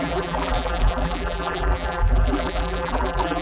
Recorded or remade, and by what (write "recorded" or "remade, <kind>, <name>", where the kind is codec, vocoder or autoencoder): remade, vocoder, BigVGAN v2